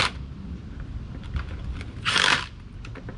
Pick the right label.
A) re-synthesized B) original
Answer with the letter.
B